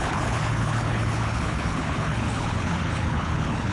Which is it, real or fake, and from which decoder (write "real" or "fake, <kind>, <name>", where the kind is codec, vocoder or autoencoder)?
fake, codec, HILCodec